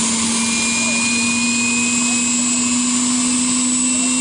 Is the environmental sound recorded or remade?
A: recorded